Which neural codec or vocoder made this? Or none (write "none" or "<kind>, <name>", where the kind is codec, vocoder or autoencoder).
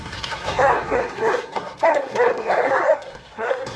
codec, SNAC